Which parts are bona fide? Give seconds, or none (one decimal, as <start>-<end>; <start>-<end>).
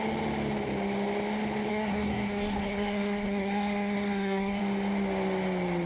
0.0-1.7; 4.6-5.9